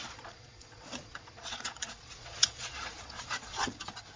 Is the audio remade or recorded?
remade